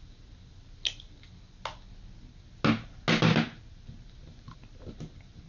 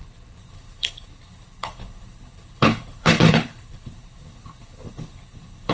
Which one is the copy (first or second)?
second